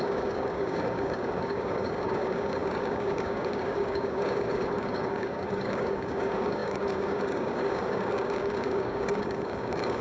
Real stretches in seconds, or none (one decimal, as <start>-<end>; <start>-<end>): none